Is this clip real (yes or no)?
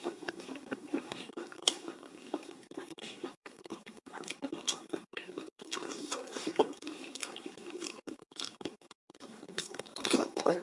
no